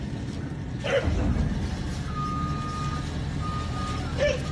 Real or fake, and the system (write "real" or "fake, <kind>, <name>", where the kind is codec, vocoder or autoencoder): real